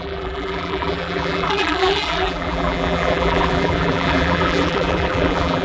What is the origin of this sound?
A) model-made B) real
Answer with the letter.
A